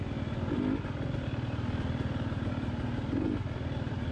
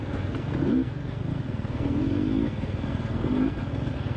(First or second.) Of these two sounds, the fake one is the second